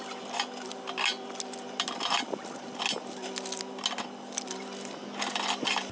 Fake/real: real